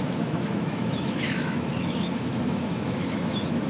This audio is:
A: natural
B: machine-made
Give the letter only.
B